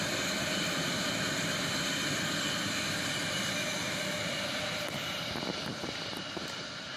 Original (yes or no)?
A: yes